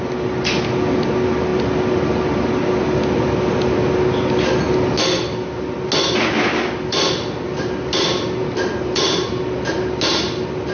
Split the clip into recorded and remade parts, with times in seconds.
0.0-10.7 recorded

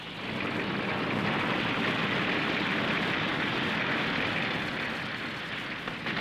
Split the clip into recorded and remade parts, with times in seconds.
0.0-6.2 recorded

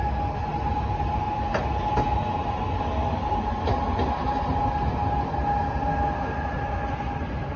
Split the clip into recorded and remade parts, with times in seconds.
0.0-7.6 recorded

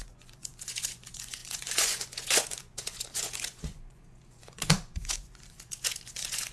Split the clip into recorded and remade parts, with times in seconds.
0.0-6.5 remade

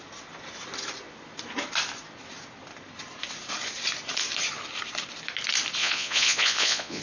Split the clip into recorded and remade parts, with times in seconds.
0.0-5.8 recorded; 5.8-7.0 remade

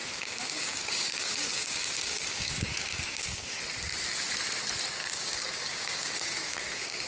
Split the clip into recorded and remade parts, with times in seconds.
0.0-3.6 remade; 3.6-5.0 recorded; 5.0-7.1 remade